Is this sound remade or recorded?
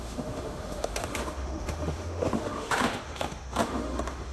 remade